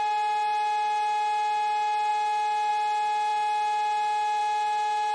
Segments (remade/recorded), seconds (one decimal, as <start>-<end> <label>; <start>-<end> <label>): 0.0-5.1 recorded